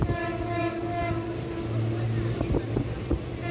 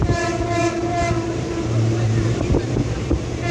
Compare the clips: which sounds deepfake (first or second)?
second